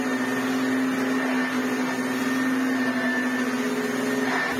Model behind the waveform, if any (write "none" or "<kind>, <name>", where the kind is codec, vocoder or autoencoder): none